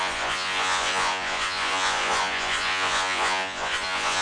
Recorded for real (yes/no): no